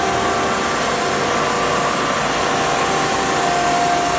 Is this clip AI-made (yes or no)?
no